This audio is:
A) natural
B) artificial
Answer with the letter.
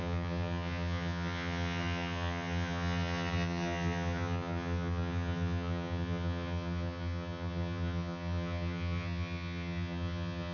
B